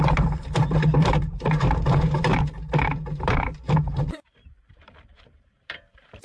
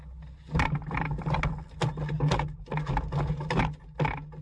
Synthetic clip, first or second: first